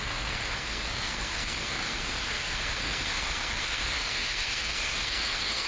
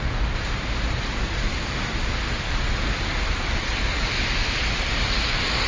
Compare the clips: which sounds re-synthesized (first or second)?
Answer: first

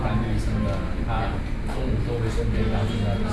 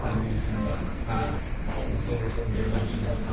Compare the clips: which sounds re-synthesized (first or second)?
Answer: second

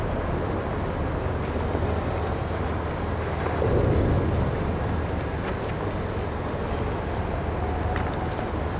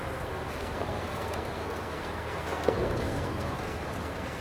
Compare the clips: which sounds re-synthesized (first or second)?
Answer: second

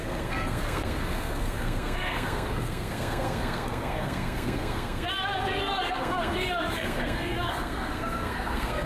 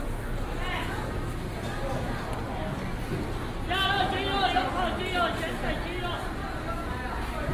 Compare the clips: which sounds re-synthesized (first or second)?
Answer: first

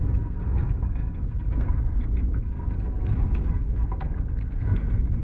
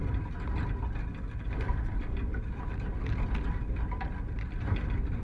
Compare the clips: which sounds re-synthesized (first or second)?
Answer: first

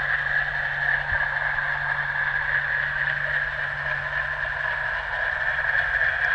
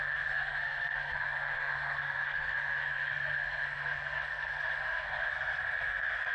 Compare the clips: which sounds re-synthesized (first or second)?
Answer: second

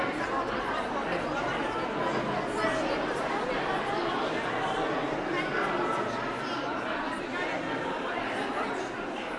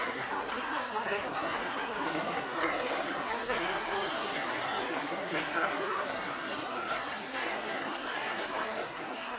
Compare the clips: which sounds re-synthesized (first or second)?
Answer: second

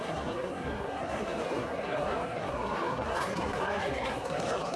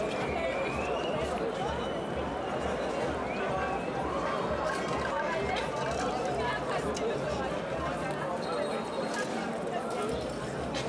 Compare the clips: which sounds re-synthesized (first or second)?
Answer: first